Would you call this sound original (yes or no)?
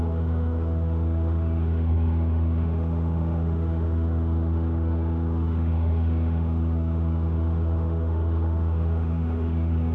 no